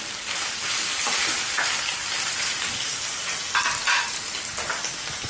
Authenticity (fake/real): real